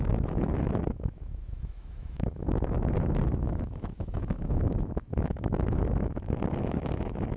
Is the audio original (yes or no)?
no